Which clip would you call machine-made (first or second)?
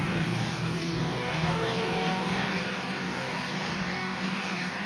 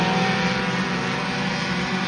first